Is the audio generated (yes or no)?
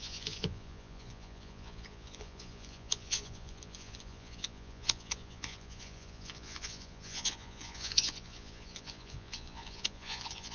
yes